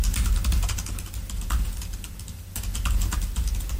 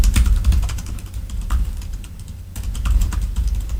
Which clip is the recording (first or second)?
first